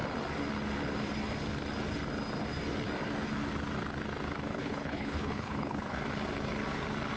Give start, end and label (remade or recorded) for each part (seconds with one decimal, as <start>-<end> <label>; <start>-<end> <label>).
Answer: 0.0-4.5 recorded; 4.5-6.0 remade; 6.0-7.2 recorded